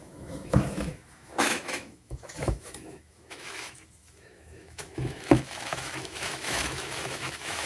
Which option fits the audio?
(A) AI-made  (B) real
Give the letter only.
A